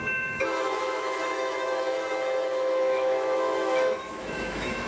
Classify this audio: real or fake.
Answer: fake